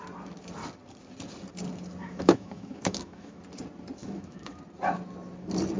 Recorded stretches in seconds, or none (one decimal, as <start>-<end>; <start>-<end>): 0.0-2.0; 3.4-4.0; 4.6-5.8